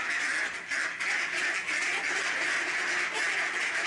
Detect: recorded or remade recorded